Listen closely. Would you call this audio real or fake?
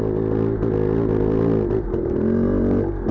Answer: real